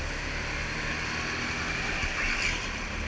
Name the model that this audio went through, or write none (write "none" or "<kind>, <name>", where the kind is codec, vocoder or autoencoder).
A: none